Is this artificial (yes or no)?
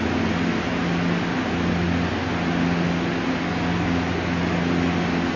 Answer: no